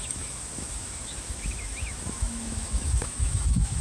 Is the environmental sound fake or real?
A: fake